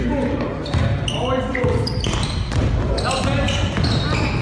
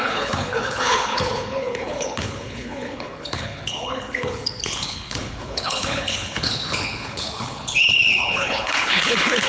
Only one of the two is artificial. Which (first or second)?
second